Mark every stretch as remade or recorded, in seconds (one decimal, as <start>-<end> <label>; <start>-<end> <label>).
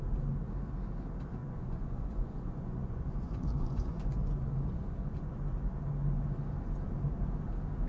0.0-1.4 recorded; 1.4-5.3 remade; 5.3-7.9 recorded